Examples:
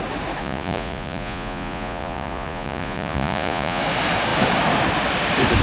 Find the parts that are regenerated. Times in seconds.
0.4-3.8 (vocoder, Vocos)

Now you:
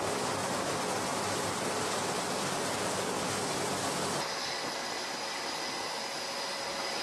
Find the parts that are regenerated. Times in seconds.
none

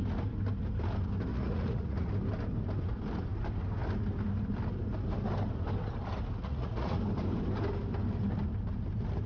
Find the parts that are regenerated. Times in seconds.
1.3-2.1 (vocoder, Vocos); 6.4-7.0

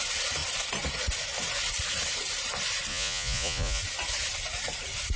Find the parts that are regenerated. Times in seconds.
2.9-3.8 (vocoder, Vocos)